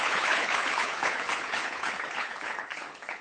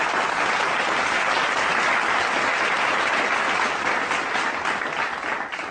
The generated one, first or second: first